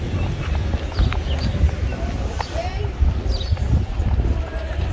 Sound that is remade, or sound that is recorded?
recorded